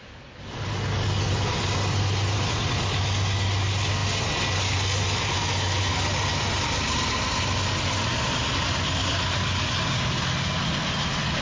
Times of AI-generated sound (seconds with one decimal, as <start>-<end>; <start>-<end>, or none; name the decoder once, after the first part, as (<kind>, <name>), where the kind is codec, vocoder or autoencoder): none